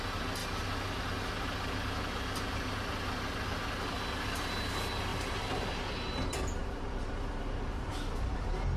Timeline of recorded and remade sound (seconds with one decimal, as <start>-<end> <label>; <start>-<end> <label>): 0.0-5.1 recorded; 5.1-5.8 remade; 5.8-6.6 recorded; 6.6-7.9 remade; 7.9-8.8 recorded